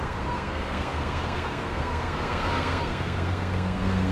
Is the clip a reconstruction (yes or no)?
yes